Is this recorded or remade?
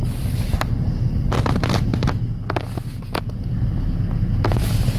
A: recorded